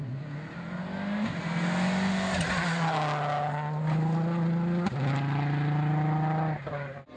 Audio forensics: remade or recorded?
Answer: recorded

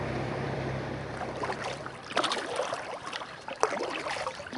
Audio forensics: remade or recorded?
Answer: remade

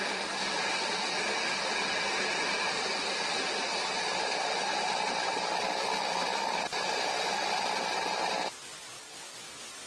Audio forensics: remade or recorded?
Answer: recorded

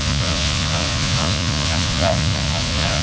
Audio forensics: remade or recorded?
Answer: remade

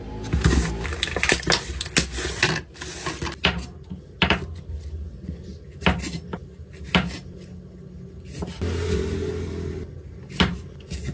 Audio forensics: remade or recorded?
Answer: recorded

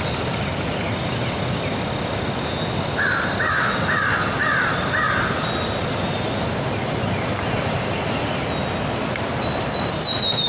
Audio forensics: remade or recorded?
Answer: recorded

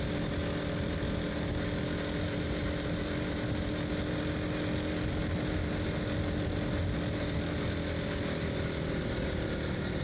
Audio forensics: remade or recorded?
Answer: recorded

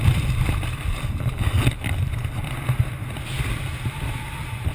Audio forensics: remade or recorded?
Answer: recorded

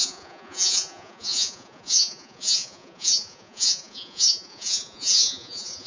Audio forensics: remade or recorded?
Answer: remade